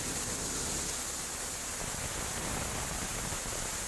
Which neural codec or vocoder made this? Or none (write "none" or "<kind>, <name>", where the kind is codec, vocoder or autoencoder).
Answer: none